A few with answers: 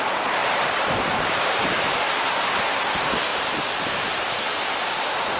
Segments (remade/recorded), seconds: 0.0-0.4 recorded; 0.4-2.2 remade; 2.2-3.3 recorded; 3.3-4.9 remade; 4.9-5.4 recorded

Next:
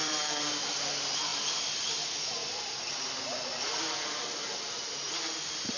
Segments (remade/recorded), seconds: 0.0-0.5 remade; 0.5-1.3 recorded; 1.3-2.8 remade; 2.8-5.8 recorded

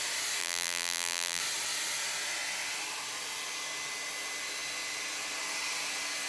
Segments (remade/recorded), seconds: 0.0-0.4 recorded; 0.4-1.4 remade; 1.4-6.3 recorded

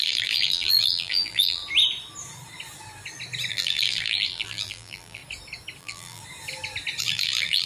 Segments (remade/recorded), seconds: 0.0-1.6 remade; 1.6-3.5 recorded; 3.5-5.2 remade; 5.2-5.8 recorded; 5.8-6.2 remade; 6.2-7.0 recorded; 7.0-7.7 remade

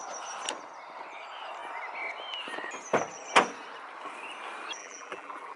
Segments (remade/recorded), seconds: 0.0-4.8 recorded; 4.8-5.6 remade

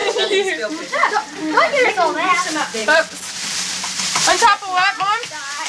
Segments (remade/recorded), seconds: 0.0-2.8 recorded; 2.8-4.0 remade; 4.0-5.7 recorded

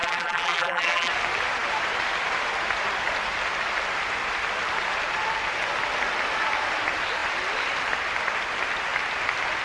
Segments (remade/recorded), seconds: 0.0-1.1 remade; 1.1-9.6 recorded